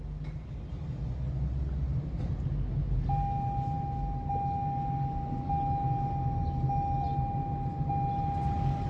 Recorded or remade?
recorded